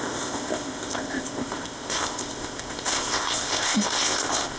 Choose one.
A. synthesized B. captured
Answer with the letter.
A